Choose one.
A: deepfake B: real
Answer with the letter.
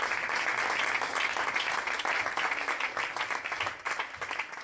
B